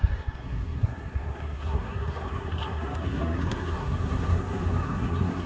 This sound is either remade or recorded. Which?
remade